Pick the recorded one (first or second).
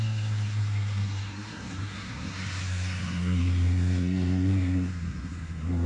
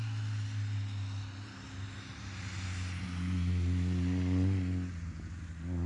second